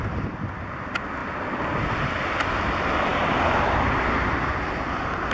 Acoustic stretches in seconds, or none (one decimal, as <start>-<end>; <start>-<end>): 0.0-5.3